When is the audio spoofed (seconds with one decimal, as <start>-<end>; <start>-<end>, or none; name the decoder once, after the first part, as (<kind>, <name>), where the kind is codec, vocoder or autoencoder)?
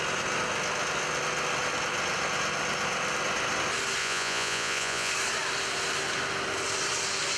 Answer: 4.0-5.1 (vocoder, Vocos)